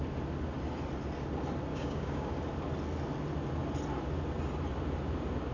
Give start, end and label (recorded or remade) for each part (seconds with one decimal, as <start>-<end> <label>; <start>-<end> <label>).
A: 0.0-1.7 recorded; 1.7-2.3 remade; 2.3-5.5 recorded